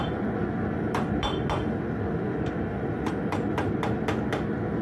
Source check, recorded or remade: recorded